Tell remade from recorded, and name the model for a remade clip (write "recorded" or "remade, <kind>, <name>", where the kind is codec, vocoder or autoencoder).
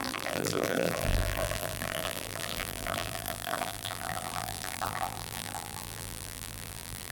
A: remade, vocoder, BigVGAN v2